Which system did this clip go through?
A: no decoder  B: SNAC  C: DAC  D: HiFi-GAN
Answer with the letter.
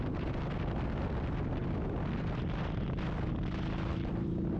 A